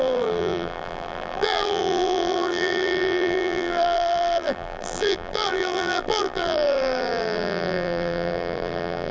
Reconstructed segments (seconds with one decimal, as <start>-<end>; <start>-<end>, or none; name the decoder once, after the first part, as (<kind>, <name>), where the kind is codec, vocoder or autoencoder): 0.0-9.1 (vocoder, BigVGAN v2)